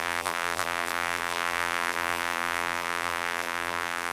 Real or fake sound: fake